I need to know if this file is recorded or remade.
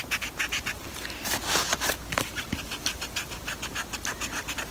recorded